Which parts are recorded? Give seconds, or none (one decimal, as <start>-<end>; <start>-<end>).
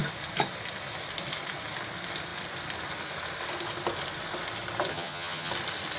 0.0-4.9; 5.5-6.0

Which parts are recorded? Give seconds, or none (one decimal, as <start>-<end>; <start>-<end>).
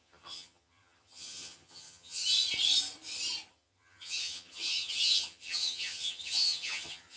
2.2-3.5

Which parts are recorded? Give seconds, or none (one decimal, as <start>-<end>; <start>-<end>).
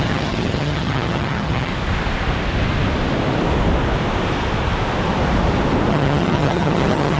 1.7-5.9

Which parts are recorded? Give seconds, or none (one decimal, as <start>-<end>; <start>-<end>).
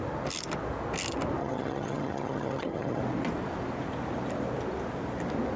0.0-1.4; 3.0-5.6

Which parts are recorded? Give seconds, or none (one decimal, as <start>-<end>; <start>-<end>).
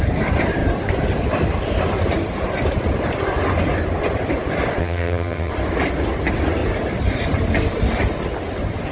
0.0-4.8; 5.5-8.9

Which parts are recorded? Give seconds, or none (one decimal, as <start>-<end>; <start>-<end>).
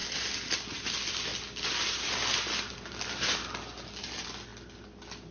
0.0-5.3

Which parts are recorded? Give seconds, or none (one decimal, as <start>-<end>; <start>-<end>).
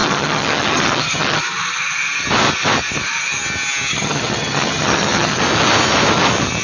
1.4-3.9; 5.4-6.6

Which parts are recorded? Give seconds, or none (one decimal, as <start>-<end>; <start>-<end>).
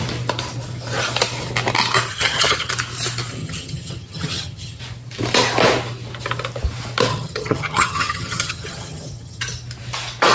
0.0-2.1; 2.7-3.4; 4.8-7.1; 9.4-10.3